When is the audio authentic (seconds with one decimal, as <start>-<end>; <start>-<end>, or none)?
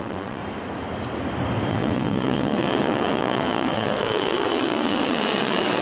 0.4-1.7